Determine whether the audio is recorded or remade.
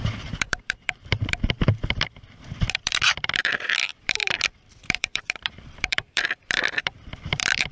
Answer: remade